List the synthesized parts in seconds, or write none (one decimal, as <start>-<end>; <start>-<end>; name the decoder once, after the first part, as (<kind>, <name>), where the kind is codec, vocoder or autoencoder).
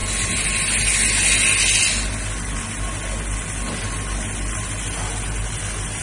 none